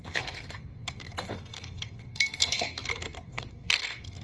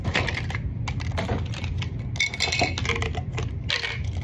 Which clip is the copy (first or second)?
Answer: first